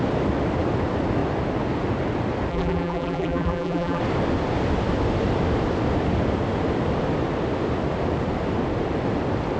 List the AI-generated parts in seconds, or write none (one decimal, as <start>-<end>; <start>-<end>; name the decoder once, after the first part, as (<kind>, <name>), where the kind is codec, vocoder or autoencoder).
2.5-4.0 (vocoder, BigVGAN v2)